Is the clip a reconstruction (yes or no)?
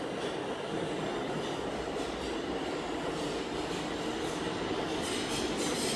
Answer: no